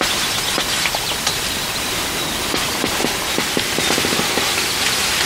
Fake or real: real